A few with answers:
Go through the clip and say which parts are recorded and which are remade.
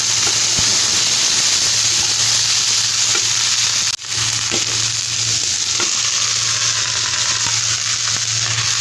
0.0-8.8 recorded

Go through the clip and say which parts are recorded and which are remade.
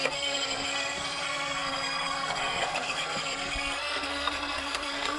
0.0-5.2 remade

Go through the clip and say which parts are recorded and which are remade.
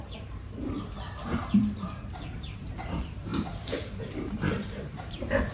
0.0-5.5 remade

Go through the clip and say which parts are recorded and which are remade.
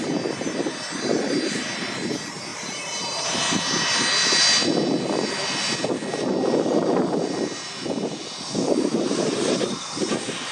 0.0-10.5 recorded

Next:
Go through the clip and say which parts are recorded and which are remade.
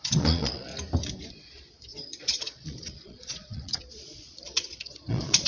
0.0-0.7 remade; 0.7-1.3 recorded; 1.3-5.5 remade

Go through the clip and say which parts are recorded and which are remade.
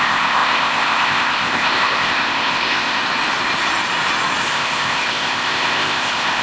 0.0-3.0 remade; 3.0-4.4 recorded; 4.4-6.4 remade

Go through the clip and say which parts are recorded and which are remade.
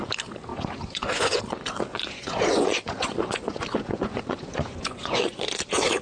0.0-0.5 recorded; 0.5-1.4 remade; 1.4-1.9 recorded; 1.9-5.5 remade; 5.5-6.0 recorded